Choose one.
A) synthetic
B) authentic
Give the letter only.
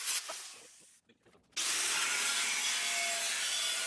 B